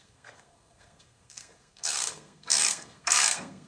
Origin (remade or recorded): remade